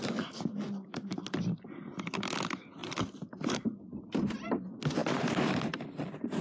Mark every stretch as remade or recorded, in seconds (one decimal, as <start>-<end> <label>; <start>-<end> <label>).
0.0-2.8 recorded; 2.8-4.3 remade; 4.3-5.0 recorded; 5.0-5.8 remade; 5.8-6.4 recorded